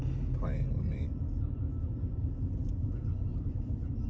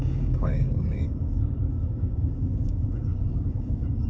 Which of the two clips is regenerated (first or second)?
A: second